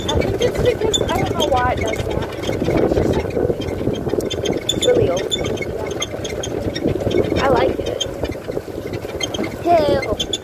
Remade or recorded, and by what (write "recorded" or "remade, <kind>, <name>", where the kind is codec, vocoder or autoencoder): recorded